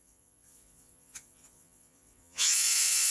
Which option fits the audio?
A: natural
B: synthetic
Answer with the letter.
B